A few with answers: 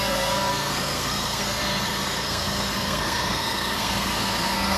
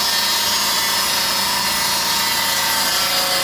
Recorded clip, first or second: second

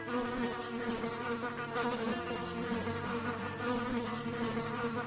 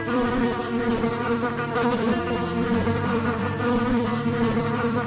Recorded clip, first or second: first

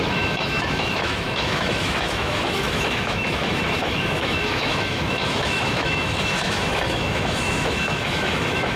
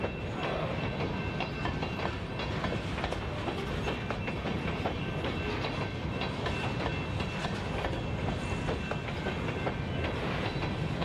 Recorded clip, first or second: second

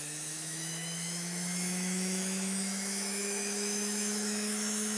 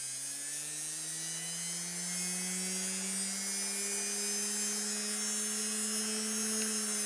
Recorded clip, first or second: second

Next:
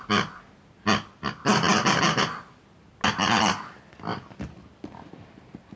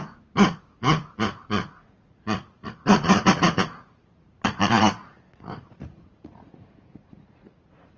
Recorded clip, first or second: first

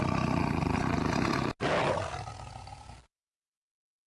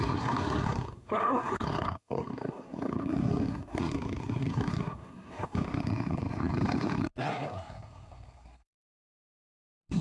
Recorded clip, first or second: first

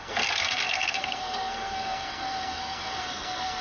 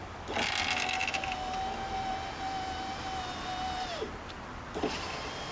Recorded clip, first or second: second